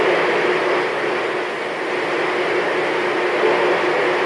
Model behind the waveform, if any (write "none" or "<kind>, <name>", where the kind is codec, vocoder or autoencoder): none